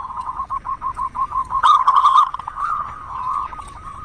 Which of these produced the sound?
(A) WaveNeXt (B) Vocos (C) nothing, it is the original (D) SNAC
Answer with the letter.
A